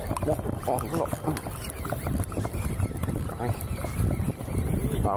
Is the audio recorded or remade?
recorded